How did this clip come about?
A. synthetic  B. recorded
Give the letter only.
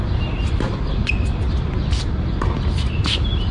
B